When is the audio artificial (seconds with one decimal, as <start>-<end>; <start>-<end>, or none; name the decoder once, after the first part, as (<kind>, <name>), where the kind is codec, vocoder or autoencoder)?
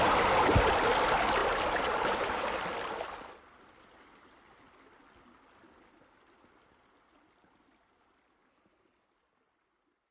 none